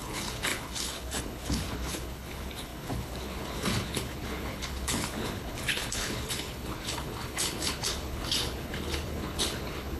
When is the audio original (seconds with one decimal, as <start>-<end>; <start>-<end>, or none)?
none